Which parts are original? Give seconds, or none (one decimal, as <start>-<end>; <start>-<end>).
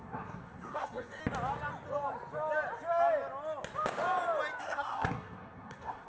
1.2-4.6